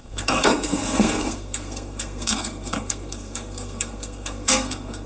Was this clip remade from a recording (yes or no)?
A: yes